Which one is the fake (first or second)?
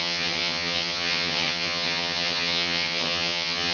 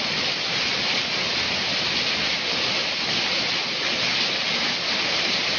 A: first